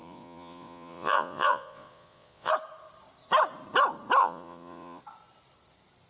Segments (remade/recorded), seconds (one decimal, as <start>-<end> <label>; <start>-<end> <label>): 0.0-2.5 remade; 2.5-4.2 recorded; 4.2-5.0 remade; 5.0-6.1 recorded